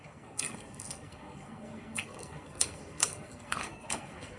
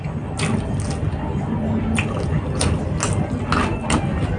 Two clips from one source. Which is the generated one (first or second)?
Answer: first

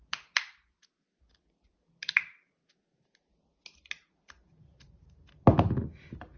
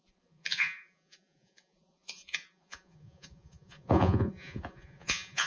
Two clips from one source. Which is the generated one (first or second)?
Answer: second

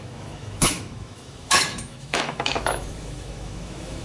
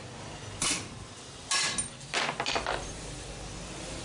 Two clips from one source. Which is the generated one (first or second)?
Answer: first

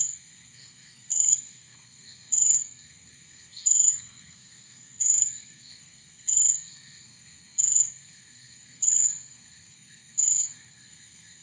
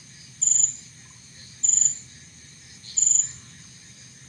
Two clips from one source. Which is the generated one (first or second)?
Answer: first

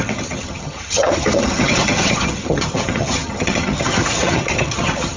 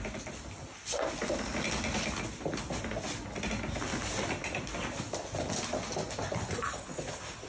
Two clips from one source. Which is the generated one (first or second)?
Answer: first